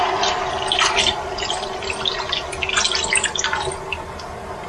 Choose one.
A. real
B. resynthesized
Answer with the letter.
A